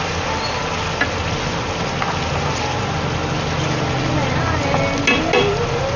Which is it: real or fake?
real